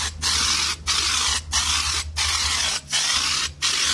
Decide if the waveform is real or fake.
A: real